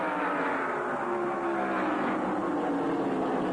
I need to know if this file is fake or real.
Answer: real